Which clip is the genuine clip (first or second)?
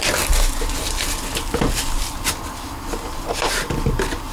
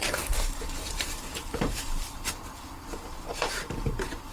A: first